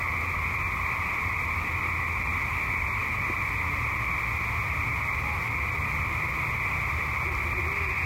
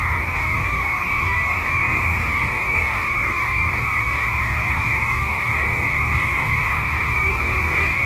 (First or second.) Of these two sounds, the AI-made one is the second